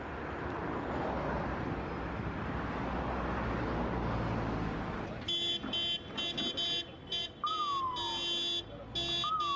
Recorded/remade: recorded